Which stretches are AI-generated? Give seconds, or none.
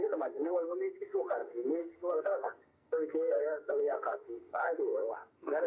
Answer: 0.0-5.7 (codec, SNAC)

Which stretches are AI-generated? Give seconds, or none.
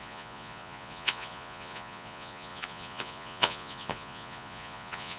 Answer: 0.0-5.2 (vocoder, Vocos)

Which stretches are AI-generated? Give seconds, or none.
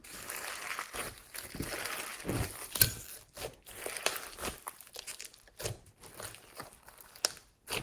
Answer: none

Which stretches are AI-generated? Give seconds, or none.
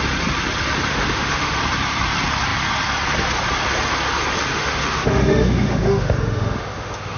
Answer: 0.9-1.6 (autoencoder, DAC-VAE); 4.5-7.2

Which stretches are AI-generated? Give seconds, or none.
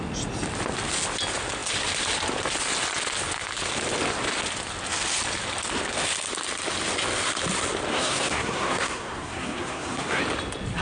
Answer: 7.9-10.2 (codec, SNAC)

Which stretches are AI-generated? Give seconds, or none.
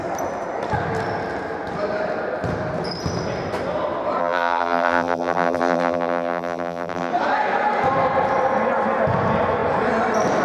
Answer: 4.2-7.1 (vocoder, BigVGAN v2)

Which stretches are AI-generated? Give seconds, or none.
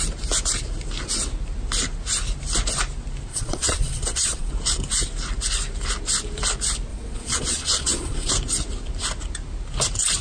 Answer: 3.3-4.5 (vocoder, Vocos); 6.9-8.3